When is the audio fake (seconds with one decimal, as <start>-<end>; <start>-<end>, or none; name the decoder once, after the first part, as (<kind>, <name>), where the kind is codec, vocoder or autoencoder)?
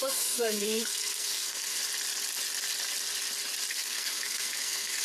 0.0-1.8 (codec, SNAC); 3.7-5.0